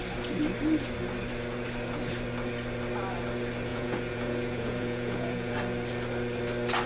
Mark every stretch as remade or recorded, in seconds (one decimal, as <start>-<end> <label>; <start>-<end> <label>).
0.0-3.7 recorded; 3.7-5.5 remade; 5.5-6.9 recorded